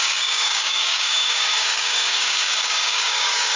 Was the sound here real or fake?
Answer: fake